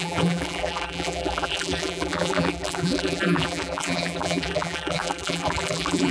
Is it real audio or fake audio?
fake